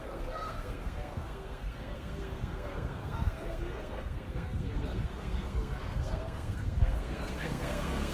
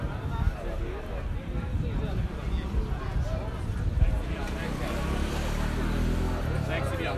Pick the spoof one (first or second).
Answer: first